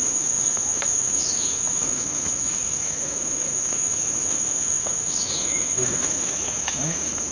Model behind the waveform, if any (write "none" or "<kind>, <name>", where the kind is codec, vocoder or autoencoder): autoencoder, DAC-VAE